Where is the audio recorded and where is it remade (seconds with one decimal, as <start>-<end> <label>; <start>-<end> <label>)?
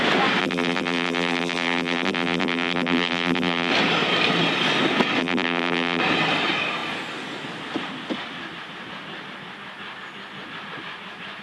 0.0-0.4 recorded; 0.4-3.7 remade; 3.7-5.2 recorded; 5.2-6.0 remade; 6.0-11.4 recorded